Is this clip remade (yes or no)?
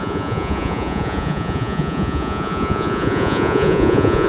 yes